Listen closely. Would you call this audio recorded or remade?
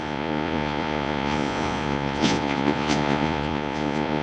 remade